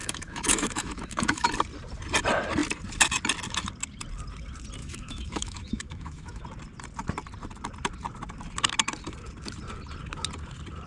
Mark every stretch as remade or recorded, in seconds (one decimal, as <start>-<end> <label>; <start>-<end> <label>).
0.0-1.5 remade; 1.5-4.8 recorded; 4.8-6.4 remade; 6.4-10.9 recorded